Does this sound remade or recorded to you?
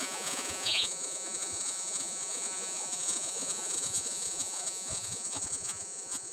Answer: remade